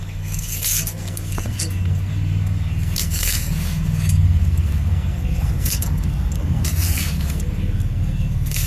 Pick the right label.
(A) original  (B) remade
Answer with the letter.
B